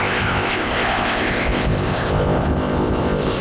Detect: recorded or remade remade